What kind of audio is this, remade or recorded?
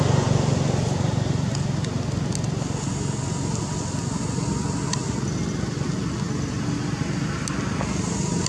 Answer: recorded